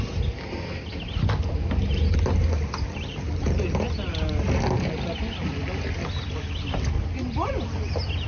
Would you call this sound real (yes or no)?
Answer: yes